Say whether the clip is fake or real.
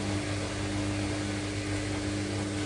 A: real